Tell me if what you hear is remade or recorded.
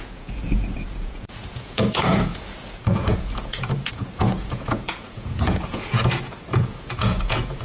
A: remade